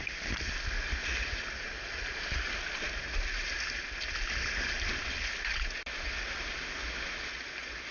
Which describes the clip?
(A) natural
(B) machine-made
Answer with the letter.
A